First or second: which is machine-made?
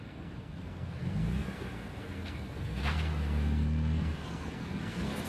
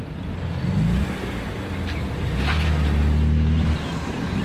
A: first